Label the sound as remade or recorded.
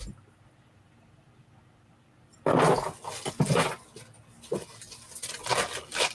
recorded